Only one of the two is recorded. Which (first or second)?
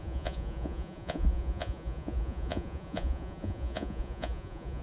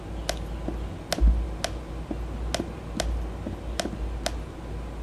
second